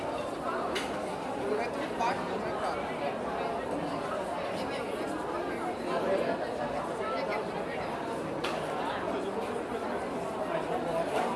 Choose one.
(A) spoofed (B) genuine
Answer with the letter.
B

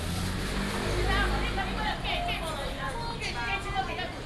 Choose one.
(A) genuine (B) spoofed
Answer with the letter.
A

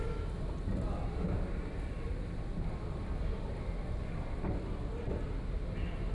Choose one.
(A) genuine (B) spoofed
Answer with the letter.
A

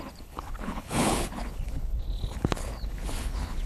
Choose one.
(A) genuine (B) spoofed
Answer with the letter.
B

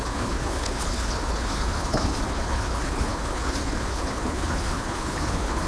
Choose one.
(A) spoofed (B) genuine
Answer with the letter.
A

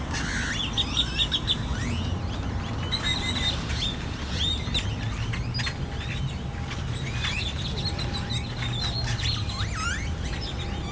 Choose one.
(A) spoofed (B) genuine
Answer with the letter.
B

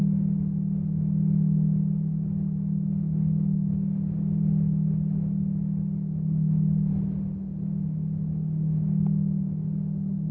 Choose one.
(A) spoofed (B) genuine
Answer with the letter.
B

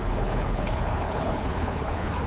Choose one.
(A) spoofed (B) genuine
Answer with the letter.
A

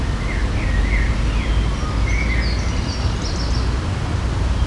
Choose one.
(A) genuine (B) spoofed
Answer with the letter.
A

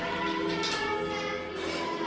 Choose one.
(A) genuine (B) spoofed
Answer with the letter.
A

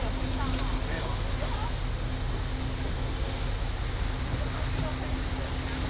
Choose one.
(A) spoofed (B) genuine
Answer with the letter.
B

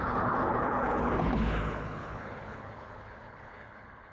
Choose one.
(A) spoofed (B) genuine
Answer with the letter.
A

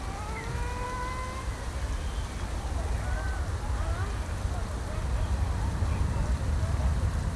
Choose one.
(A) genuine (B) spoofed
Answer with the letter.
A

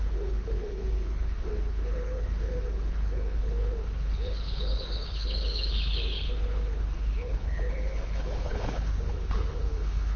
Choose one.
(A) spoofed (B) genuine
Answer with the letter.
A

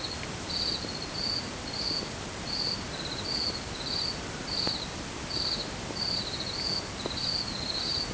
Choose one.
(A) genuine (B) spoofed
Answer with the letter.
A